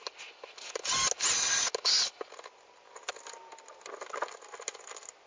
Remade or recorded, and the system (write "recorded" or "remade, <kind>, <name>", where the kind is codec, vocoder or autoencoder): recorded